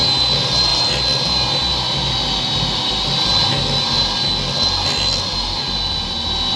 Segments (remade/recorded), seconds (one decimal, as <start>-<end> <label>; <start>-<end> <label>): 0.0-6.6 recorded